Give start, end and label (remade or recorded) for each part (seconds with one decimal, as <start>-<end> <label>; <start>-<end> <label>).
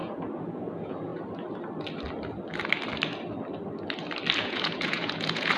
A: 0.0-1.1 remade; 1.1-4.4 recorded; 4.4-5.6 remade